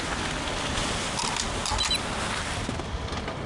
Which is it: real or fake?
real